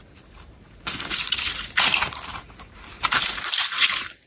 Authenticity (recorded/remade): remade